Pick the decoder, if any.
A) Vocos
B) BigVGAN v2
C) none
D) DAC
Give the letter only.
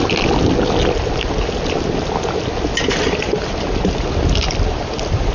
C